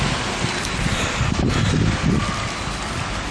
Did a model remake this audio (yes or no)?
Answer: no